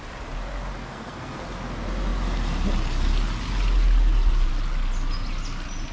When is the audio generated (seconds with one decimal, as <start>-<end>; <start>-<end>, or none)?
0.8-1.4